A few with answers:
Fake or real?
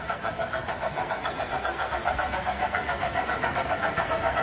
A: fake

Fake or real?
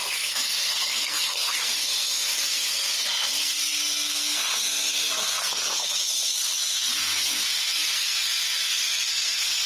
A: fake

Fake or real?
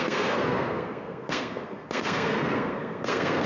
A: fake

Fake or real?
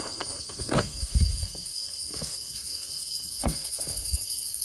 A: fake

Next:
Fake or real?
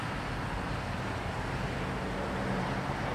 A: real